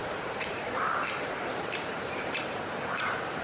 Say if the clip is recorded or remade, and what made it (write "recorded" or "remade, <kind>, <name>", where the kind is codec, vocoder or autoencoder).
remade, vocoder, BigVGAN v2